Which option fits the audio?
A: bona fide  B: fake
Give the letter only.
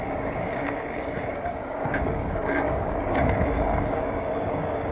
B